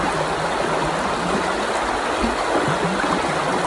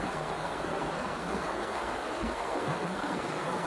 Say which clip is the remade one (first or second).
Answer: second